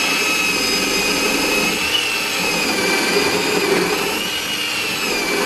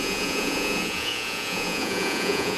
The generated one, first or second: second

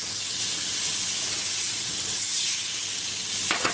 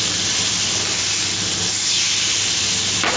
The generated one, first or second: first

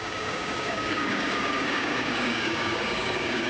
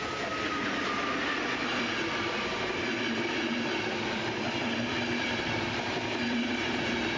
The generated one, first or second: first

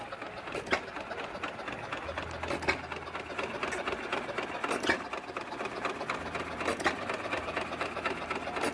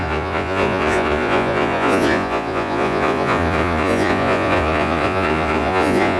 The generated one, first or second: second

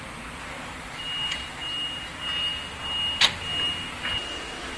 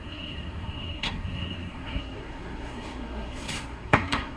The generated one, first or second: second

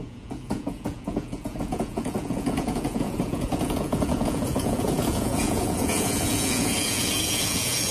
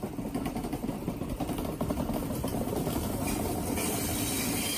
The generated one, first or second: first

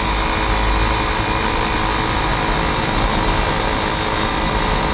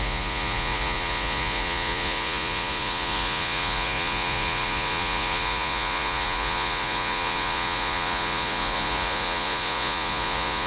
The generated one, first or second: second